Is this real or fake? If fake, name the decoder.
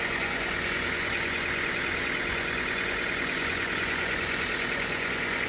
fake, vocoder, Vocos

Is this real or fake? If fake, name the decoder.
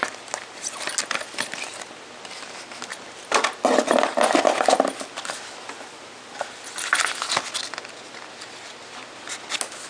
real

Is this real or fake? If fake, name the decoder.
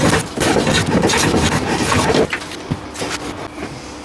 real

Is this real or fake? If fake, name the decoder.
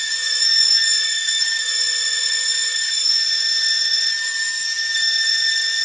fake, vocoder, Vocos